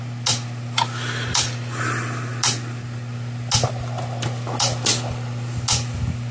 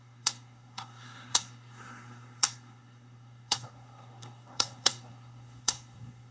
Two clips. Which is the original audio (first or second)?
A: first